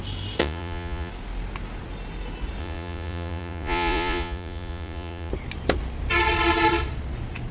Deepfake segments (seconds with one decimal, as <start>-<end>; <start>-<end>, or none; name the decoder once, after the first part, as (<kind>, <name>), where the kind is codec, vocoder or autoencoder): 0.4-1.1 (vocoder, Vocos); 2.6-5.3